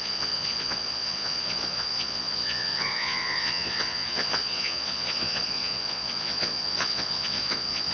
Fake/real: fake